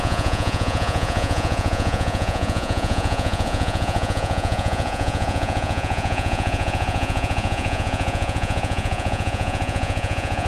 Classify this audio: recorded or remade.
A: remade